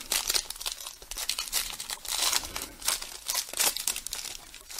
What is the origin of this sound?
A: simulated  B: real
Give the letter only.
A